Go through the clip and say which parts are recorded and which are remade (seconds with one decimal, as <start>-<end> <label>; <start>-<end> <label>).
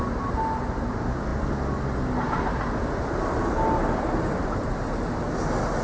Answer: 0.0-5.8 recorded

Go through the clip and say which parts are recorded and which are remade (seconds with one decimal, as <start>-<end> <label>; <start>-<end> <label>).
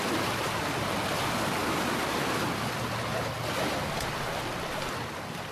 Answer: 0.0-5.5 recorded